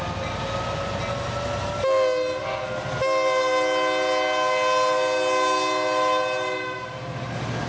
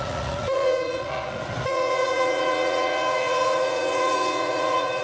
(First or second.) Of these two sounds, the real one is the first